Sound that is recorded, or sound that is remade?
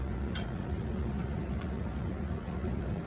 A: remade